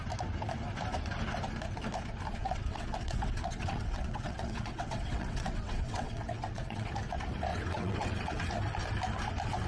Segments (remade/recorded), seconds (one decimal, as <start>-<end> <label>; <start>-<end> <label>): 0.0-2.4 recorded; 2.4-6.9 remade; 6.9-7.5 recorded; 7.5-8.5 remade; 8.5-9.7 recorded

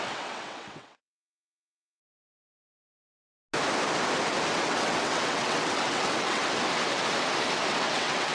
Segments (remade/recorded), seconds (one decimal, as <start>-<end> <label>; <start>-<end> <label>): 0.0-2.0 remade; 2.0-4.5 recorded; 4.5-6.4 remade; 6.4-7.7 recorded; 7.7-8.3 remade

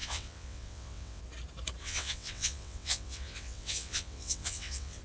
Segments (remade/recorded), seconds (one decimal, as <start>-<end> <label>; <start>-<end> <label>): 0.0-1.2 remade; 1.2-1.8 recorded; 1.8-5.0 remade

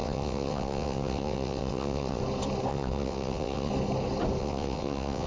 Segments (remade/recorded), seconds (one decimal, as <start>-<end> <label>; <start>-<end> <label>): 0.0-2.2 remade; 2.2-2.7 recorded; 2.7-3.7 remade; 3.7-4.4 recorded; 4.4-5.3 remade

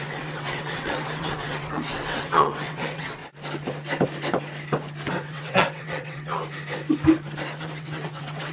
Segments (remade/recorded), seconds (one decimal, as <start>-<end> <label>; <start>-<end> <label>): 0.0-3.2 remade; 3.2-5.3 recorded; 5.3-6.4 remade; 6.4-7.6 recorded; 7.6-8.5 remade

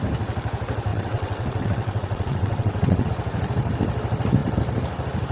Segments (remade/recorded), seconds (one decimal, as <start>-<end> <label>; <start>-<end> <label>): 0.0-0.9 recorded; 0.9-3.1 remade; 3.1-5.3 recorded

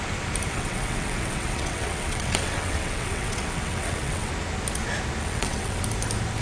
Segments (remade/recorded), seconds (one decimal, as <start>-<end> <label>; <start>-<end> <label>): 0.0-0.5 recorded; 0.5-4.3 remade; 4.3-5.2 recorded; 5.2-5.8 remade; 5.8-6.4 recorded